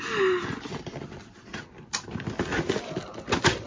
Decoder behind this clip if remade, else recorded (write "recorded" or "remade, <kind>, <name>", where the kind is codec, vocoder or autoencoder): recorded